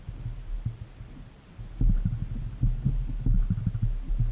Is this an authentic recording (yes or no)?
yes